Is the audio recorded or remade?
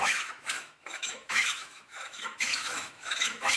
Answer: remade